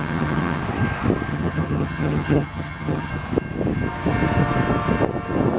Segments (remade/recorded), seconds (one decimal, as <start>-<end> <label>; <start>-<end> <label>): 0.0-0.6 remade; 0.6-1.3 recorded; 1.3-3.1 remade; 3.1-5.6 recorded